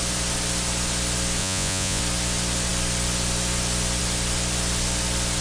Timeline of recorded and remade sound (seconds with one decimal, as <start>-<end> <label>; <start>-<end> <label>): 0.0-1.4 recorded; 1.4-2.0 remade; 2.0-5.4 recorded